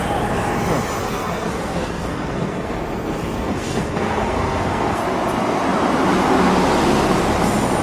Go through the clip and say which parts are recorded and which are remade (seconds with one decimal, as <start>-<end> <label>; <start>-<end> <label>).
0.0-1.0 recorded; 1.0-5.0 remade; 5.0-7.8 recorded